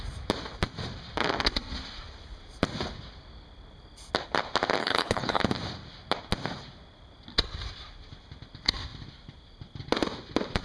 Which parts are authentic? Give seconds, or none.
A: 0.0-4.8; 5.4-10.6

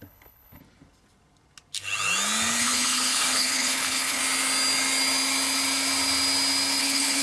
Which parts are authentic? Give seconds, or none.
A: 0.6-2.6; 4.2-6.8

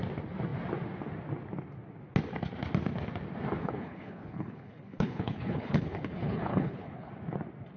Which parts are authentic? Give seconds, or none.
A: 0.0-3.6; 7.1-7.8